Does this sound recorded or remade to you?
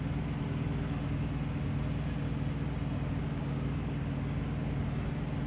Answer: recorded